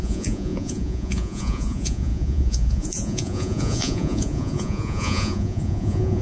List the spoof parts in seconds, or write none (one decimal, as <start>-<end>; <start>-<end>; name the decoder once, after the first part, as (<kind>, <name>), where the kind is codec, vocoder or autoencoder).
0.0-6.2 (vocoder, Vocos)